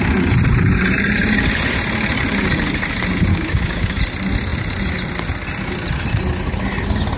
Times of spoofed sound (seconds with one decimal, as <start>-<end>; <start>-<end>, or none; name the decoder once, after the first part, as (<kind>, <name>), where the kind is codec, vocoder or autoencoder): 3.3-4.0 (codec, DAC)